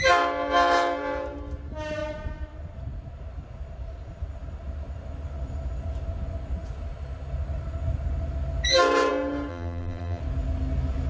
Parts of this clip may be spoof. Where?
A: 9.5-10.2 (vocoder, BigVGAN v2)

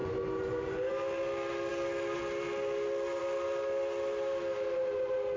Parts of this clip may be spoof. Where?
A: none

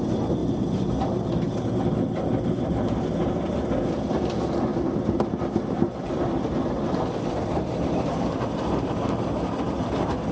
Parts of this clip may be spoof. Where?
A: none

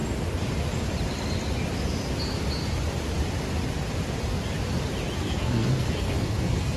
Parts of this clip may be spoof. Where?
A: 5.2-6.8 (codec, SNAC)